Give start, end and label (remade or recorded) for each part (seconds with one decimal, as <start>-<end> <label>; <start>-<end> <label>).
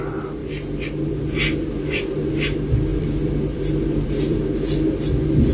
0.0-2.9 recorded; 2.9-4.4 remade; 4.4-5.5 recorded